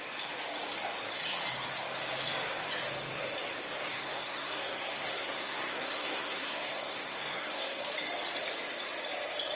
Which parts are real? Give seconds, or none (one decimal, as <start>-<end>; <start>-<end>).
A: 0.0-3.9; 7.8-9.6